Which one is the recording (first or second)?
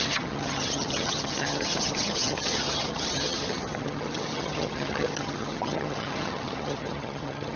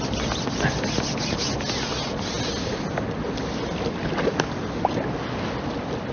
second